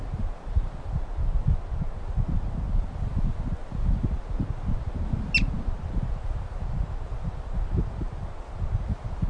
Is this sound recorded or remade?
recorded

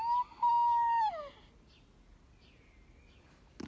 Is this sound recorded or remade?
recorded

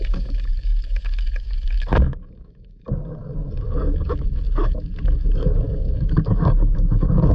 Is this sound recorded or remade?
remade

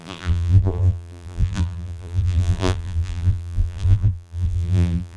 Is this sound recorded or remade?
remade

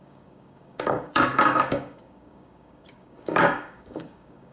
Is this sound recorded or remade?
remade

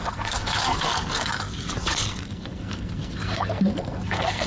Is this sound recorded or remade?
remade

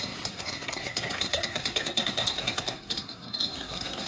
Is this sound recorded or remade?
remade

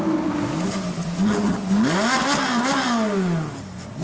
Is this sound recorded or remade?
recorded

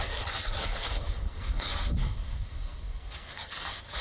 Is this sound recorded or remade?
remade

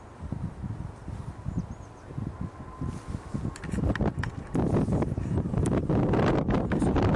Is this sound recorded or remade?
recorded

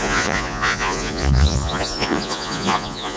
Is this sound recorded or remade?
remade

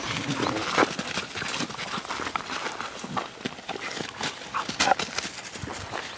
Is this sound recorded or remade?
recorded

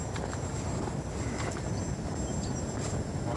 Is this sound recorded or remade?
recorded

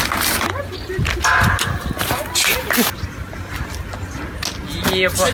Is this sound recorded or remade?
recorded